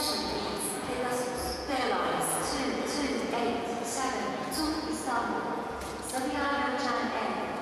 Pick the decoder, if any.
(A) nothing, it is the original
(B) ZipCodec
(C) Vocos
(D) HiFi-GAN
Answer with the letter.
C